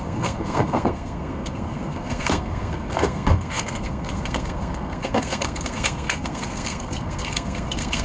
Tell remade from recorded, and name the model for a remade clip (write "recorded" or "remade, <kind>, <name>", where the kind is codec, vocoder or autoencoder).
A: remade, codec, SNAC